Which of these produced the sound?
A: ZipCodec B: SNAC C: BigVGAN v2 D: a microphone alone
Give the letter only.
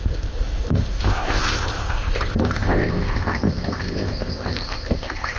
A